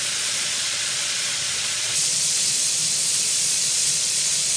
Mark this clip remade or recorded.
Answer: remade